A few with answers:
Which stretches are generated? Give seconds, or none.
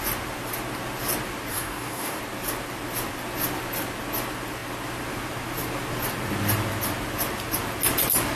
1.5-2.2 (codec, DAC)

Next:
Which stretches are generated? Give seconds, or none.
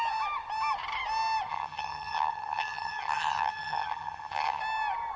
1.5-4.6 (vocoder, HiFi-GAN)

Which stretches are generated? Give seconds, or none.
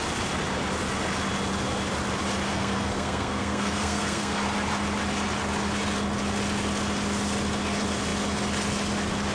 2.5-4.4 (codec, SNAC)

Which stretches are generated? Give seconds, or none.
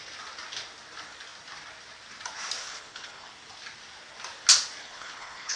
2.6-3.3 (codec, HILCodec); 4.8-5.6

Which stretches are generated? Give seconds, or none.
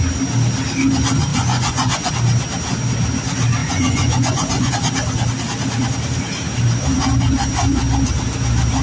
1.3-2.1 (vocoder, Vocos); 3.6-4.7